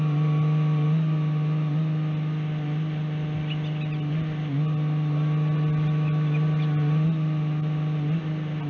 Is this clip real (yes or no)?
yes